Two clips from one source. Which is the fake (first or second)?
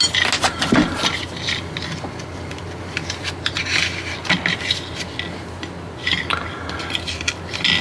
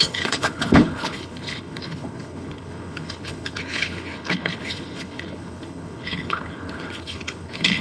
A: second